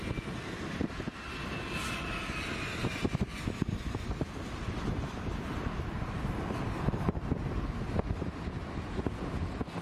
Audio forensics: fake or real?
real